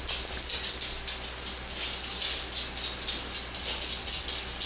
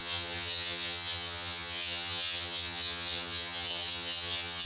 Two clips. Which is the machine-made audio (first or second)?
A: second